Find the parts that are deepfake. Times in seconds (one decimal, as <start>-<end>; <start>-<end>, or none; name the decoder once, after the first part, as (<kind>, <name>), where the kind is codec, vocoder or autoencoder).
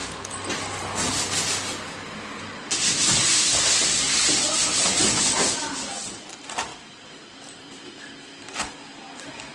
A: 4.6-5.6 (vocoder, BigVGAN v2); 6.7-8.0